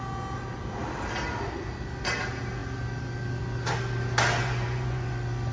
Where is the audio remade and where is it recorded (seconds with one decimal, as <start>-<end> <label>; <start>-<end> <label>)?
0.0-4.4 recorded; 4.4-5.1 remade; 5.1-5.5 recorded